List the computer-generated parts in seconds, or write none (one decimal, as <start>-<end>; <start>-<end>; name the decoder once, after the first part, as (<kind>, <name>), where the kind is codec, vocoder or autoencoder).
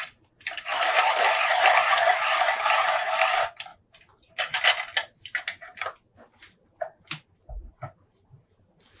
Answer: none